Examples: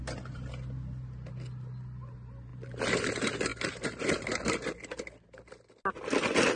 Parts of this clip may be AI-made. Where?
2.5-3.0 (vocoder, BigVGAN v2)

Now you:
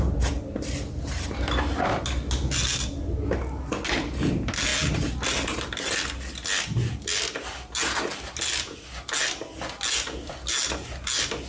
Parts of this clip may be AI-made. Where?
none

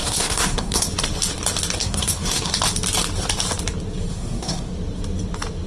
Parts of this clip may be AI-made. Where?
0.0-0.9 (codec, SNAC); 1.8-2.5; 4.1-4.7

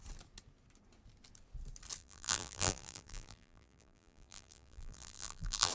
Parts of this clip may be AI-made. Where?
2.0-5.7 (vocoder, BigVGAN v2)

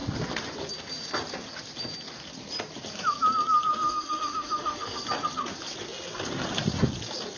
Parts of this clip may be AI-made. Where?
3.7-5.0 (autoencoder, DAC-VAE)

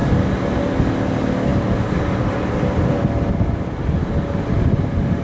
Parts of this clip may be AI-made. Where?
none

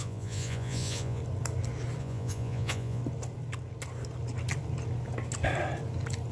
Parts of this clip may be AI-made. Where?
0.0-1.2 (vocoder, Vocos); 2.0-3.0